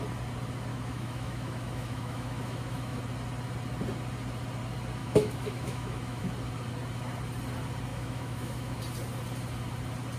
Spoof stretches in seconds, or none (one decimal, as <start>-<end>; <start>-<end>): 0.7-3.0; 5.0-6.2; 7.9-8.8